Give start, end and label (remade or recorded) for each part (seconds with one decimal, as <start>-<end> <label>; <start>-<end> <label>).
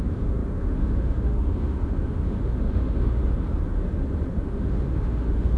0.0-3.2 remade; 3.2-4.3 recorded; 4.3-5.6 remade